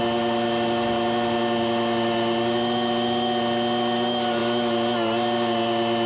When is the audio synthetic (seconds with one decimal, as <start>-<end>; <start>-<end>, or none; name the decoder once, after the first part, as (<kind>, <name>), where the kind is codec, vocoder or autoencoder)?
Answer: none